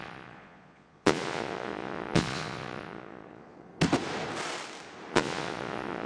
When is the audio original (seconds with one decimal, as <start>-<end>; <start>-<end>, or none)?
3.7-5.1